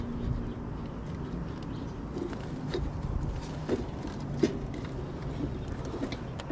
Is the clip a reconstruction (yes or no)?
no